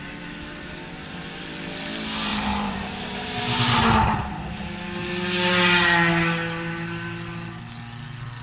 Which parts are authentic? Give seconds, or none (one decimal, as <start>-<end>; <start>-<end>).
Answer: 0.0-2.3; 3.4-8.4